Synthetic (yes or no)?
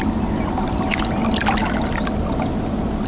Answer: no